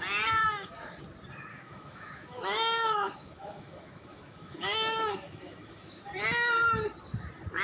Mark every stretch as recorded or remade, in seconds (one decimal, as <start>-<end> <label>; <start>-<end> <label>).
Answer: 0.0-0.4 recorded; 0.4-1.0 remade; 1.0-1.5 recorded; 1.5-6.0 remade; 6.0-7.6 recorded